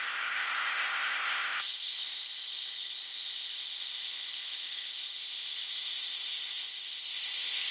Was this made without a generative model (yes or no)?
no